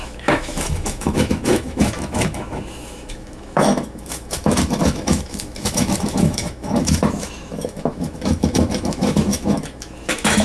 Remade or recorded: remade